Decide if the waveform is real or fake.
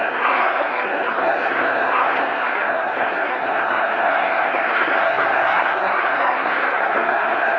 fake